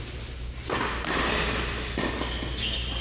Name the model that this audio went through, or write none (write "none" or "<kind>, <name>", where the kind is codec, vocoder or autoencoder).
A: none